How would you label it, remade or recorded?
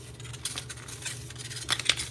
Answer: recorded